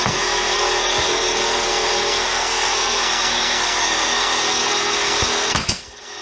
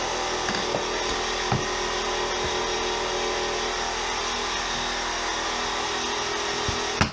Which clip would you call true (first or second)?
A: second